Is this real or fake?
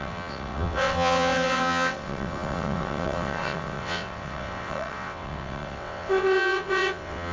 fake